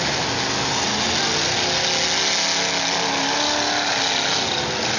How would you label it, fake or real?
real